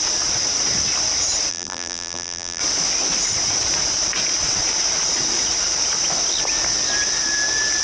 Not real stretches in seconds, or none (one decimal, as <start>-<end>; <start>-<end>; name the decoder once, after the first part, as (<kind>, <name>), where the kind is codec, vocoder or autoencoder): 1.5-2.6 (vocoder, BigVGAN v2)